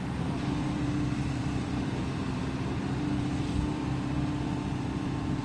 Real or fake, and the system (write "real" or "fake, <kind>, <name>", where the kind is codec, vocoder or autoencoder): fake, vocoder, BigVGAN v2